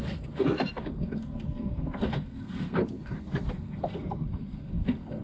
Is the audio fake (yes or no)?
yes